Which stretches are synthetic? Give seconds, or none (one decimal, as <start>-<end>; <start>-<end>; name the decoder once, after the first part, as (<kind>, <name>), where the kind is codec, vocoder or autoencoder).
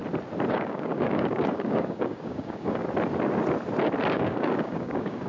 0.5-2.8 (codec, DAC); 4.1-5.3